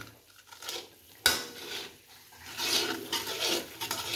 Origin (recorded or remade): recorded